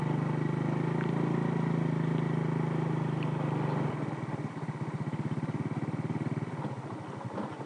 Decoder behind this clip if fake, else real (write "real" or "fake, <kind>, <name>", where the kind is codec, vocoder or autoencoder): real